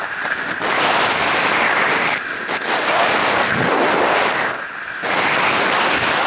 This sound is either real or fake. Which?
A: real